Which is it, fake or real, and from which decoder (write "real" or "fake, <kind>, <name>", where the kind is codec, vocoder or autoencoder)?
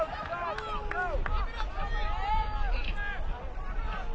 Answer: real